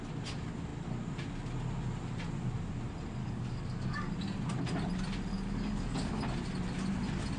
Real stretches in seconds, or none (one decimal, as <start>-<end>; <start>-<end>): 0.0-3.2; 4.1-5.3; 6.2-7.4